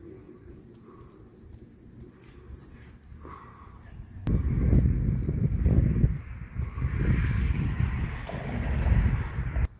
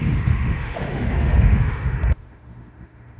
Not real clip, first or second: second